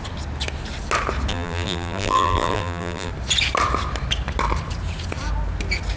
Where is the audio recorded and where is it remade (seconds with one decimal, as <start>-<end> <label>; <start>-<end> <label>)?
0.0-1.3 recorded; 1.3-3.1 remade; 3.1-6.0 recorded